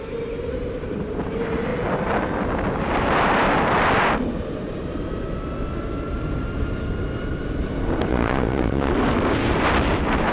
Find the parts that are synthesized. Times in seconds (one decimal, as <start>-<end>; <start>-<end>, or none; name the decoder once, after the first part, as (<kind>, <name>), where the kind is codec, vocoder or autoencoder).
8.1-8.9 (vocoder, Vocos)